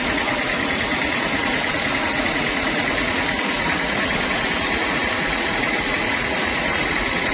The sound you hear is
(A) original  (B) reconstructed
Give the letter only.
B